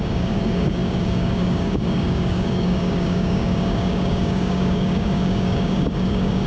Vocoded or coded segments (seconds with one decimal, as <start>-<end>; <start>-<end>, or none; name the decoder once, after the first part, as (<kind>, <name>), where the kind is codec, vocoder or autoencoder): 0.0-6.5 (codec, DAC)